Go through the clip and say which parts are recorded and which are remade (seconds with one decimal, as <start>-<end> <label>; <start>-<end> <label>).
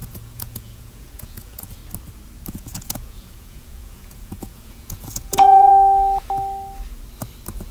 0.0-1.8 remade; 1.8-2.5 recorded; 2.5-5.7 remade; 5.7-7.7 recorded